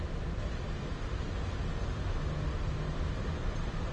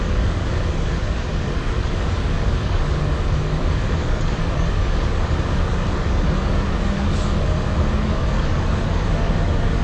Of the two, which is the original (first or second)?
first